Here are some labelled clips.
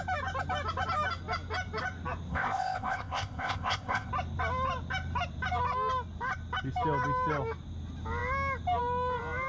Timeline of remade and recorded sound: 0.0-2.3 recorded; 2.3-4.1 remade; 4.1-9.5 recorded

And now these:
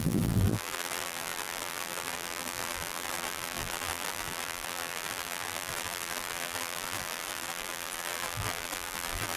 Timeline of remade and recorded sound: 0.0-9.4 remade

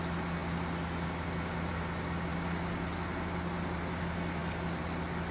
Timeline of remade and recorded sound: 0.0-5.3 recorded

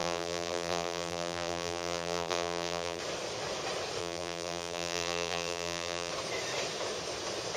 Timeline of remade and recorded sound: 0.0-3.0 remade; 3.0-4.0 recorded; 4.0-6.1 remade; 6.1-7.6 recorded

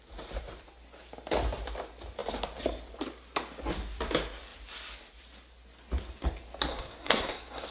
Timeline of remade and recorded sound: 0.0-6.7 recorded; 6.7-7.7 remade

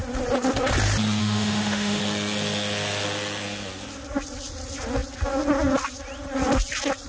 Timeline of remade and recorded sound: 0.0-1.2 recorded; 1.2-2.0 remade; 2.0-7.1 recorded

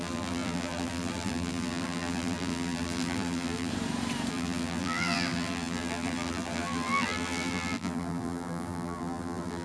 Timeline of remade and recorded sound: 0.0-3.7 remade; 3.7-4.3 recorded; 4.3-9.6 remade

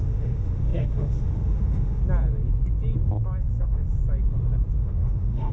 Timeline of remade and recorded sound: 0.0-2.0 remade; 2.0-3.4 recorded; 3.4-4.0 remade; 4.0-4.8 recorded; 4.8-5.5 remade